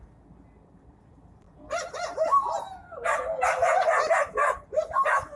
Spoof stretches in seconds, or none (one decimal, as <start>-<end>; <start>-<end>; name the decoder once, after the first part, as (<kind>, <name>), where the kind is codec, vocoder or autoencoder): none